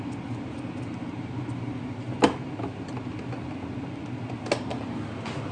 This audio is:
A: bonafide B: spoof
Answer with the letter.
A